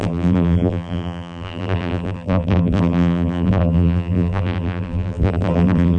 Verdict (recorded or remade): remade